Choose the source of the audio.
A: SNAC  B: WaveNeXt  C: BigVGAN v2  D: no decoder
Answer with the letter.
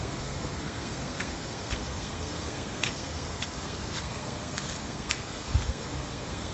A